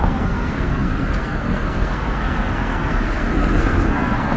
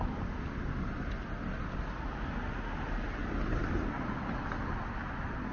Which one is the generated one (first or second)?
first